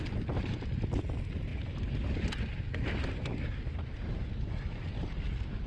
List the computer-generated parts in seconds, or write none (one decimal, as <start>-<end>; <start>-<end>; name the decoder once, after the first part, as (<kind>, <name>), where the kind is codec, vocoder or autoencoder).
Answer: none

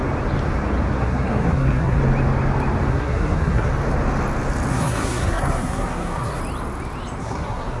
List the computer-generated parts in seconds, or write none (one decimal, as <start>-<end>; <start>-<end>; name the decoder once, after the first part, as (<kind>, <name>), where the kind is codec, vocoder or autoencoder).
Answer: 1.0-2.0 (codec, SNAC); 2.9-3.7; 4.7-6.4; 7.2-7.8

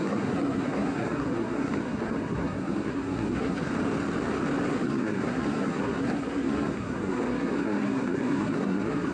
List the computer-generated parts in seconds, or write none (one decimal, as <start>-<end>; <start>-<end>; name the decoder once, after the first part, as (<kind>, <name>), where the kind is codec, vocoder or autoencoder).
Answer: 0.0-3.7 (codec, SNAC); 4.7-9.1

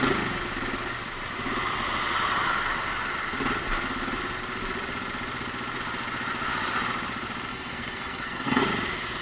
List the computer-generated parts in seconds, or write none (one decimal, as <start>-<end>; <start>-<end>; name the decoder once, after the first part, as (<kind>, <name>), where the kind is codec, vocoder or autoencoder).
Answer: 7.5-8.6 (codec, SNAC)

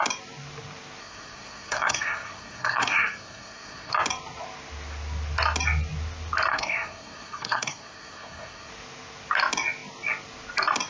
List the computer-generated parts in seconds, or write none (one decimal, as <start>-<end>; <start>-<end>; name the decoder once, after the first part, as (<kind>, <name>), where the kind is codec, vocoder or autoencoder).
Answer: 1.0-3.9 (codec, SNAC); 6.5-8.7

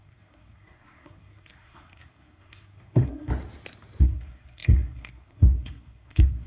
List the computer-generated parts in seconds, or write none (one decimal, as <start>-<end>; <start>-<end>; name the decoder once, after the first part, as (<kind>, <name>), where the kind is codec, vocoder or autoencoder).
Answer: 0.0-3.3 (codec, SNAC); 4.0-6.5

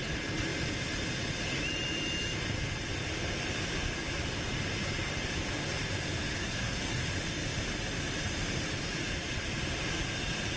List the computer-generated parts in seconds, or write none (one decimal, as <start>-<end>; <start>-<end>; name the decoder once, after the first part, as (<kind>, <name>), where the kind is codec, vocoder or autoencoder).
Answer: 6.4-7.0 (codec, SNAC)

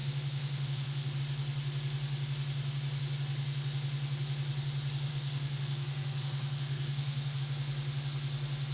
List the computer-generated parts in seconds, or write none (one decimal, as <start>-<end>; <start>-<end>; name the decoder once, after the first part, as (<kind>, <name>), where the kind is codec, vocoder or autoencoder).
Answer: 0.0-1.2 (codec, SNAC); 5.1-7.4